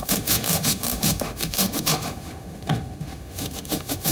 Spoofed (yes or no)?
yes